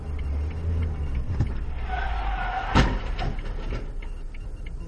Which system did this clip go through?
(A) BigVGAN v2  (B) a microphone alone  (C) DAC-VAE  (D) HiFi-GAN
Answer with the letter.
B